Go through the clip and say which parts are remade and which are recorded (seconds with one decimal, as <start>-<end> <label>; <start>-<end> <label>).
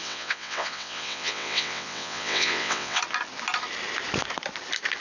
0.0-3.0 remade; 3.0-5.0 recorded